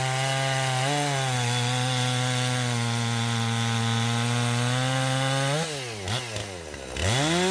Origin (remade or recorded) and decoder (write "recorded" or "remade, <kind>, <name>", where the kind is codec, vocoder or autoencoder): recorded